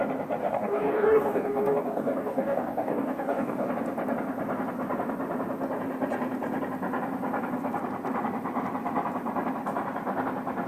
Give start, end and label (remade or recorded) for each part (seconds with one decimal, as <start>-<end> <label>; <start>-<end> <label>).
0.0-0.4 recorded; 0.4-3.7 remade; 3.7-10.7 recorded